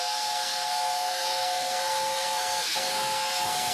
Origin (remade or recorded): remade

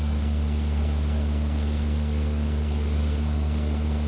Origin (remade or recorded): remade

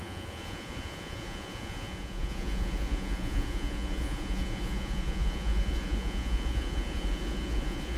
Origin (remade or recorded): remade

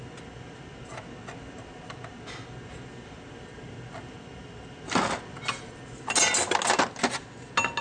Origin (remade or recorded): recorded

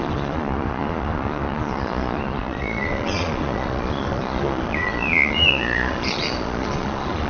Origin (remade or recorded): remade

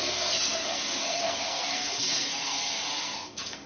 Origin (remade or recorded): remade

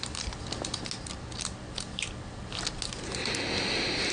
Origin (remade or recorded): recorded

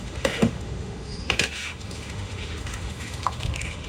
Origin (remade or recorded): remade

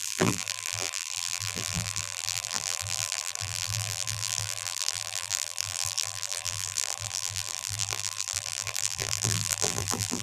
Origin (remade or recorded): remade